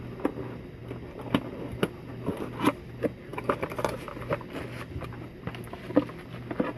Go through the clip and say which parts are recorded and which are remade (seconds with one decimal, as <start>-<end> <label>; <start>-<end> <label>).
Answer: 0.0-6.8 recorded